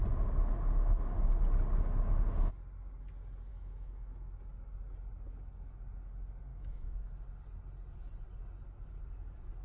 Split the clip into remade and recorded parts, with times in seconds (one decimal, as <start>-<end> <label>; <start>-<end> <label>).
0.0-3.5 recorded; 3.5-4.3 remade; 4.3-6.5 recorded; 6.5-7.1 remade; 7.1-9.6 recorded